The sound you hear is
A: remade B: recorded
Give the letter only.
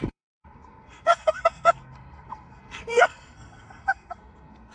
A